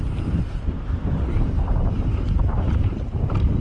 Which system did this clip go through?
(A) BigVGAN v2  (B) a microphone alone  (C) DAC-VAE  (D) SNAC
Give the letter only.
A